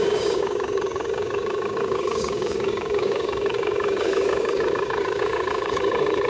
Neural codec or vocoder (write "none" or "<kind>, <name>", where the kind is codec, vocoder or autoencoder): codec, DAC